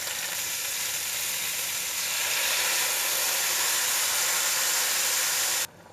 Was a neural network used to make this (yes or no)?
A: yes